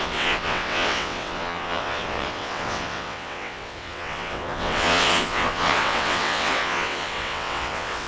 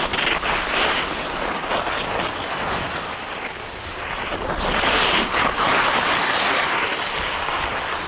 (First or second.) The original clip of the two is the second